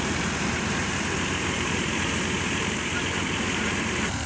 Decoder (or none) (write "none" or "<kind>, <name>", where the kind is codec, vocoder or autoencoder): vocoder, BigVGAN v2